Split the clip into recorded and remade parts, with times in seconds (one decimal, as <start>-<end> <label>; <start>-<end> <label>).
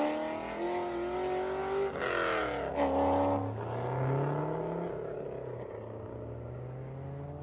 0.0-7.4 recorded